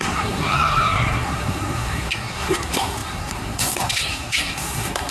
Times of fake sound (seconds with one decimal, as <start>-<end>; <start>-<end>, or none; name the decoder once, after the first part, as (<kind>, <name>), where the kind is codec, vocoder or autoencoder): 0.0-5.1 (codec, SNAC)